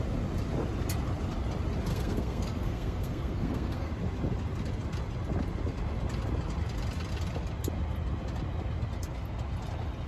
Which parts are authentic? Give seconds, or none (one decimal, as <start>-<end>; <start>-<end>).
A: 0.0-1.9; 3.9-10.1

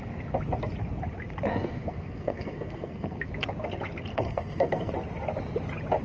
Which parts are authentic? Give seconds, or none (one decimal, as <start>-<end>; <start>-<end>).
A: 0.0-1.5; 3.3-4.1; 4.9-6.0

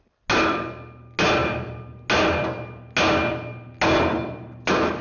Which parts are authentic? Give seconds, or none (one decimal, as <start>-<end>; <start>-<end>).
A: 0.0-5.0